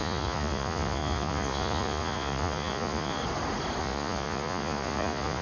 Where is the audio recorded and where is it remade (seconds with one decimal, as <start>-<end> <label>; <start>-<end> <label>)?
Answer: 0.0-3.2 remade; 3.2-3.8 recorded; 3.8-5.4 remade